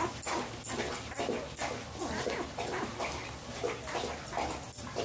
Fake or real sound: real